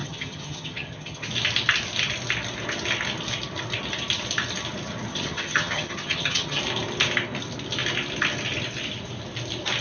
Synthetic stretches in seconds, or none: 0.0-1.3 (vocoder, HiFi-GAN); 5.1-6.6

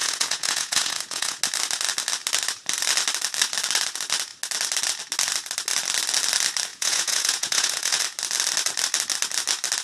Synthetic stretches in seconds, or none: 0.0-1.4 (vocoder, Vocos); 6.7-8.0

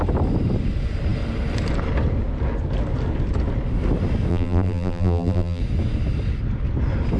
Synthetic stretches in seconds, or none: 4.3-5.6 (vocoder, BigVGAN v2)

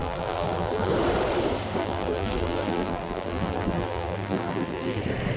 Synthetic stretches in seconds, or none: 0.0-0.9 (vocoder, BigVGAN v2); 1.8-5.0

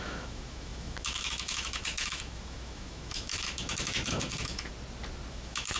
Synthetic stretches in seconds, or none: 0.0-4.7 (autoencoder, DAC-VAE); 5.3-5.8

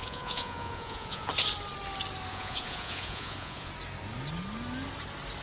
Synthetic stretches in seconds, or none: 0.0-1.3 (vocoder, Vocos); 2.3-3.7

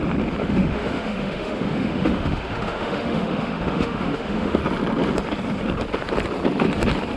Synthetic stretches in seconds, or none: 0.4-4.6 (autoencoder, DAC-VAE)

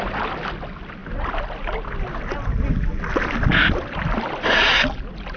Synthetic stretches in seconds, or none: none